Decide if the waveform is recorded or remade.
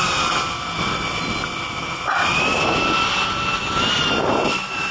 recorded